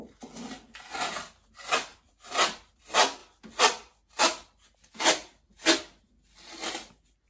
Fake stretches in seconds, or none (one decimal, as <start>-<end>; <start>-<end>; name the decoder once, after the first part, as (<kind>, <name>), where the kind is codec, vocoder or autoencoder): 1.9-2.7 (vocoder, BigVGAN v2)